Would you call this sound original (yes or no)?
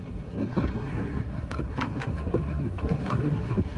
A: no